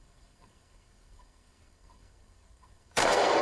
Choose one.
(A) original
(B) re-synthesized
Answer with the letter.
B